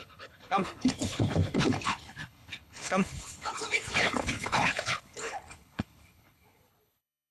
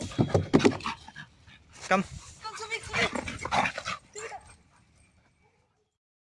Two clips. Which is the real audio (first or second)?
second